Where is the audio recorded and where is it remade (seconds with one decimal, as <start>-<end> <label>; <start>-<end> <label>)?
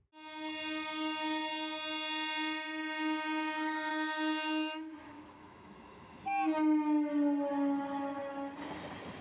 0.0-3.9 recorded; 3.9-6.2 remade; 6.2-9.2 recorded